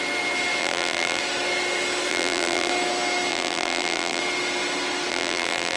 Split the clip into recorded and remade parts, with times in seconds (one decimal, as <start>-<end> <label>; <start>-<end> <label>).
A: 0.0-0.6 recorded; 0.6-1.2 remade; 1.2-2.1 recorded; 2.1-2.7 remade; 2.7-3.3 recorded; 3.3-4.2 remade; 4.2-5.1 recorded; 5.1-5.8 remade